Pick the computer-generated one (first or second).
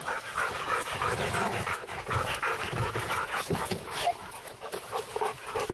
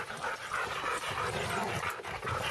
first